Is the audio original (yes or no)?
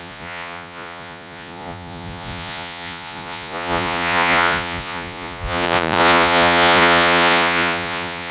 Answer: no